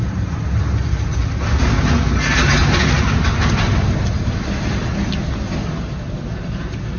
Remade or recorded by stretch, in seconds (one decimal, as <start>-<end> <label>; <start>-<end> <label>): 0.0-7.0 recorded